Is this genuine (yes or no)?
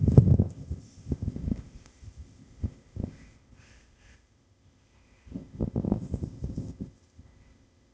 no